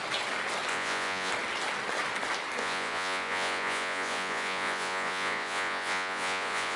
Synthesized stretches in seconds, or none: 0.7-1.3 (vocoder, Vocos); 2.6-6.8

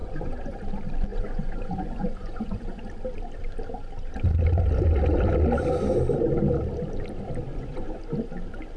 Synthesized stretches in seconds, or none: 0.0-0.6 (vocoder, Vocos); 1.1-2.8; 7.5-8.0

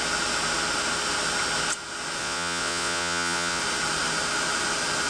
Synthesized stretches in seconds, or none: 2.2-3.6 (vocoder, Vocos)

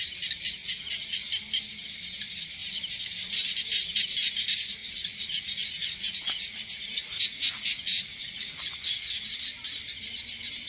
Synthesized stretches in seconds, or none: 0.6-1.3 (vocoder, Vocos); 4.8-9.1

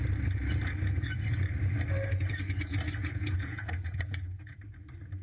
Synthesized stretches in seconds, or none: 3.0-4.6 (vocoder, Vocos)

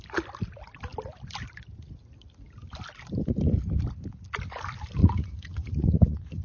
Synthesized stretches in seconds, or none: 5.0-6.4 (vocoder, Vocos)